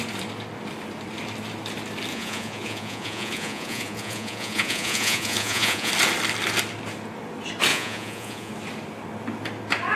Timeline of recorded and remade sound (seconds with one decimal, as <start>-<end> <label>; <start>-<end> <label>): 0.0-2.1 recorded; 2.1-5.9 remade; 5.9-7.7 recorded; 7.7-8.5 remade; 8.5-10.0 recorded